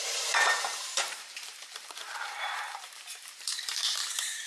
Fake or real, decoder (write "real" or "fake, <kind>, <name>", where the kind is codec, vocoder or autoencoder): fake, vocoder, BigVGAN v2